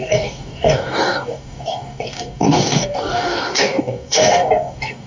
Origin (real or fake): fake